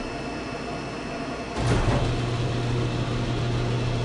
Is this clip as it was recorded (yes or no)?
yes